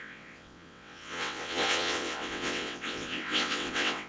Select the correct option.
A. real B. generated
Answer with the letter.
B